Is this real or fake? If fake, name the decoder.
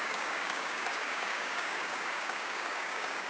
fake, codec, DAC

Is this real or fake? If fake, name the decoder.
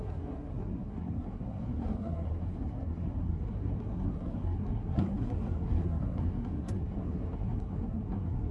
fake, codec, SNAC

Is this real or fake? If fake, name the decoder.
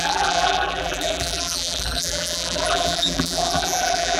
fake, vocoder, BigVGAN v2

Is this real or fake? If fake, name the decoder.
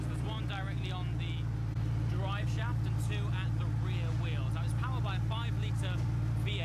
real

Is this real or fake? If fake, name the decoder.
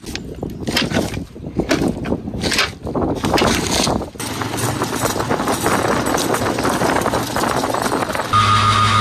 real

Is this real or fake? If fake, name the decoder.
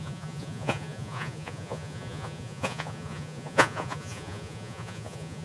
fake, vocoder, Vocos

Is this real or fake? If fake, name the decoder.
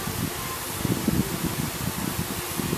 real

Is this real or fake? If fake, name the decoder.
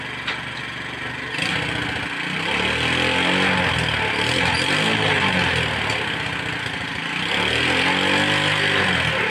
real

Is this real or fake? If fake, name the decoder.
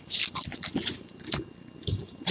real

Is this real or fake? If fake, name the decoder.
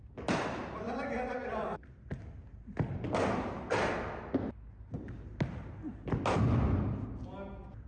real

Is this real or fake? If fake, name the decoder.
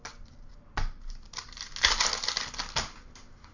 real